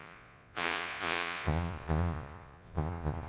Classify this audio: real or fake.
fake